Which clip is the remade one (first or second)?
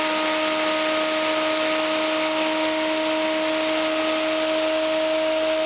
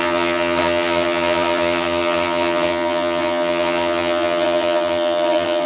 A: second